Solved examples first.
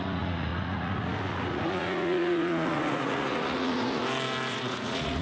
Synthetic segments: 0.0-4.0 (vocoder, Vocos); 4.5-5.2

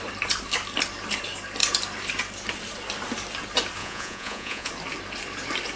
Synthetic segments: 3.8-4.7 (vocoder, Vocos)

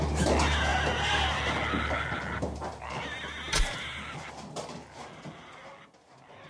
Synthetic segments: none

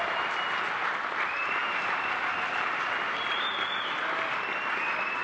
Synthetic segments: none

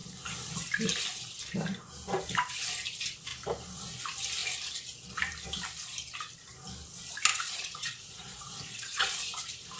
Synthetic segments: 7.3-9.2 (vocoder, Vocos)